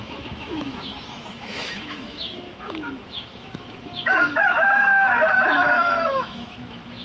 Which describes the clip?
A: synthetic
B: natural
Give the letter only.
A